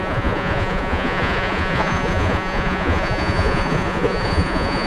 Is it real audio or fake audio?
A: fake